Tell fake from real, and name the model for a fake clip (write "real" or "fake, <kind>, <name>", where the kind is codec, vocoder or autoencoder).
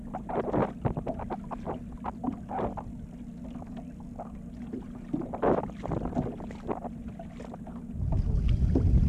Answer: real